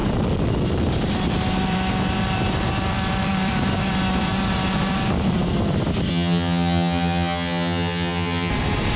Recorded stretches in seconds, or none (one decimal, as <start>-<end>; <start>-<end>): 0.0-6.1; 8.5-9.0